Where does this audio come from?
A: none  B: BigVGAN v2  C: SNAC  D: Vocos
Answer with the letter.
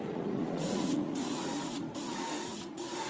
D